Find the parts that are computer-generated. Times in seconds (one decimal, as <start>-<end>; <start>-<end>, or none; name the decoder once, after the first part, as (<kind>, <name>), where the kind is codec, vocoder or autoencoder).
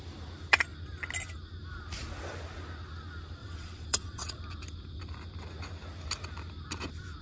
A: 3.4-4.4 (vocoder, WaveNeXt)